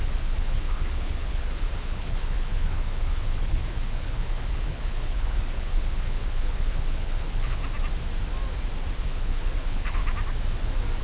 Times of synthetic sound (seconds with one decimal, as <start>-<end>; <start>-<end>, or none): 0.0-7.6; 9.0-10.0